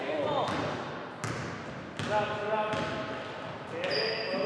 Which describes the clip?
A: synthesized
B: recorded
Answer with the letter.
B